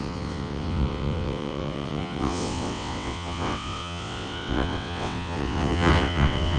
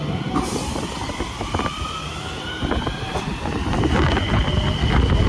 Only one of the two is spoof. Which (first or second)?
first